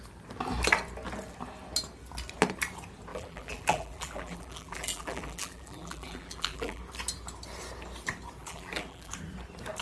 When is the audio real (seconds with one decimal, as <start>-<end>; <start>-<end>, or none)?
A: 0.0-3.1; 6.8-8.4; 9.1-9.8